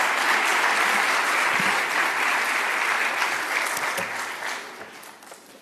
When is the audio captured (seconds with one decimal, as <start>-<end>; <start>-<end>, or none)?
0.0-0.5; 2.0-5.6